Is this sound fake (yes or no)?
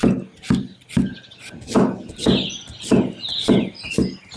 no